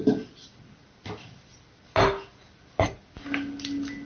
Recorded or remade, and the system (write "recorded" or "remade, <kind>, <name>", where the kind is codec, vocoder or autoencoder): recorded